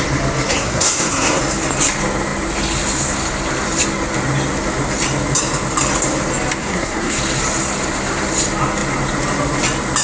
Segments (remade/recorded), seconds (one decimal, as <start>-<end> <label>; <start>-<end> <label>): 0.0-0.5 recorded; 0.5-1.4 remade; 1.4-6.6 recorded; 6.6-7.2 remade; 7.2-10.0 recorded